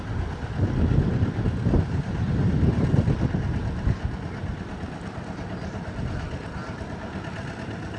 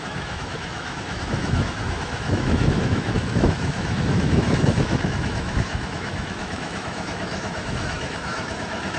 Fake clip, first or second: second